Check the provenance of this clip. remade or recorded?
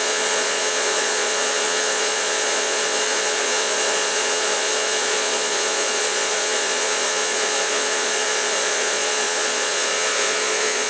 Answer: remade